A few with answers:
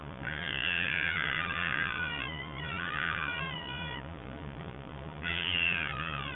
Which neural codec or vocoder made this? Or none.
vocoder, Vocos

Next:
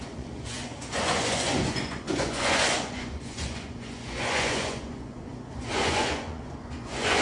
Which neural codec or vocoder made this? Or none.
vocoder, Vocos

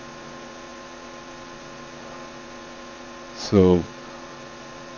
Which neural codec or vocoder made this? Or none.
vocoder, Vocos